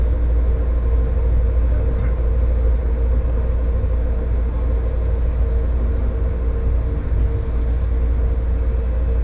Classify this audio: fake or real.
real